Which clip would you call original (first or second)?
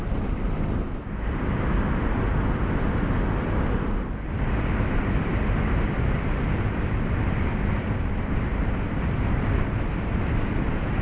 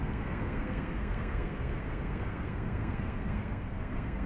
first